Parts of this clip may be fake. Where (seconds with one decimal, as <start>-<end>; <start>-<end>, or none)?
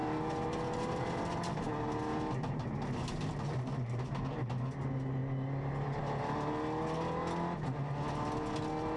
none